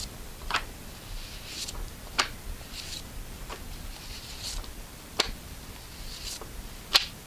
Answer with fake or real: real